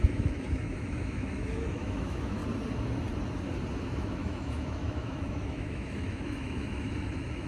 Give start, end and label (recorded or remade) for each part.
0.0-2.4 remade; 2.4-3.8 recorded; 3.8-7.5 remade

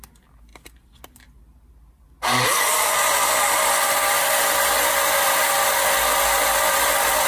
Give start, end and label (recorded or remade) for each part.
0.0-7.3 recorded

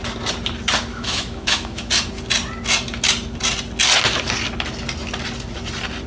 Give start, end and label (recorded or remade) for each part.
0.0-0.9 recorded; 0.9-1.9 remade; 1.9-6.1 recorded

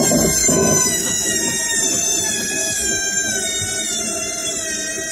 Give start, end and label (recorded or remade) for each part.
0.0-0.4 recorded; 0.4-1.3 remade; 1.3-2.6 recorded; 2.6-3.3 remade; 3.3-5.1 recorded

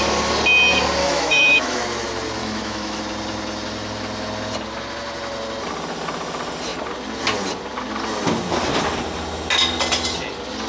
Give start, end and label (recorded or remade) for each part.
0.0-1.0 recorded; 1.0-1.8 remade; 1.8-2.4 recorded; 2.4-3.0 remade; 3.0-10.7 recorded